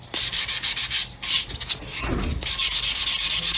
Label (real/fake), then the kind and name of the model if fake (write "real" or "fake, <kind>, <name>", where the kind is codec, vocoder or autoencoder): real